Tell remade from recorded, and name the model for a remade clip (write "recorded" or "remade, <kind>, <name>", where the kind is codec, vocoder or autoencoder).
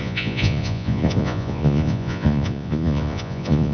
remade, vocoder, Vocos